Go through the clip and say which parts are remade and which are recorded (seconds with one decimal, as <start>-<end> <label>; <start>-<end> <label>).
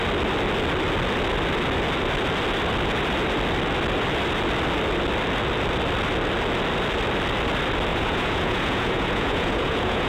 0.0-7.9 recorded; 7.9-10.1 remade